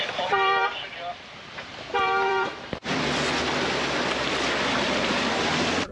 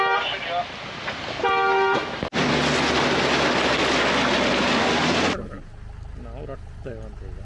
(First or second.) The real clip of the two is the second